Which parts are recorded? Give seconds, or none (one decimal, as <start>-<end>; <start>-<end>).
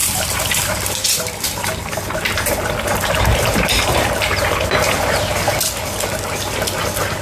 2.0-3.3; 4.4-7.2